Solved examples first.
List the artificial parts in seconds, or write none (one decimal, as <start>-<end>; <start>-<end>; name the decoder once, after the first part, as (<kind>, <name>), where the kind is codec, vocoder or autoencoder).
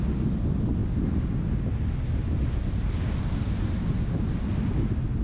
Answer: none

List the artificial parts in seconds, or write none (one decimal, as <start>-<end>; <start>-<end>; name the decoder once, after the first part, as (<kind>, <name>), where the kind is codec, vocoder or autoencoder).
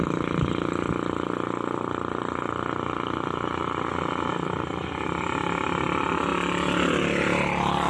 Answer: none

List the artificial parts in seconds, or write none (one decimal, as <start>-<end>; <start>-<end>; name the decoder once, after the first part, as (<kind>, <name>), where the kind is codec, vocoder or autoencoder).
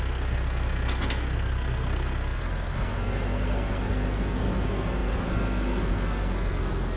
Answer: 0.0-7.0 (codec, SNAC)